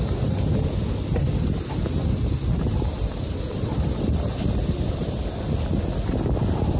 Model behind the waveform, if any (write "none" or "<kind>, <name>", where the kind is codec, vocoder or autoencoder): none